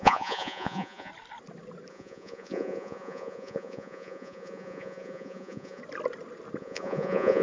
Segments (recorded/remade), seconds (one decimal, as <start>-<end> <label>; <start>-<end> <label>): 0.0-1.1 remade; 1.1-1.9 recorded; 1.9-5.8 remade; 5.8-6.6 recorded; 6.6-7.4 remade